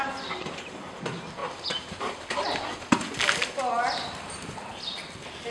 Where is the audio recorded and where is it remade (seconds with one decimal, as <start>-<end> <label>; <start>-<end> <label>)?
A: 0.0-5.5 recorded